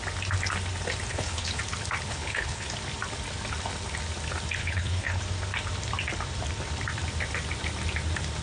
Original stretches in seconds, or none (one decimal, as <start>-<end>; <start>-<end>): 0.0-1.1; 1.6-2.1; 2.7-4.6; 5.2-8.4